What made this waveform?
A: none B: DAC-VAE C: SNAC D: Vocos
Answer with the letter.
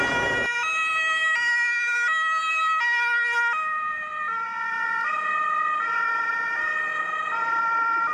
A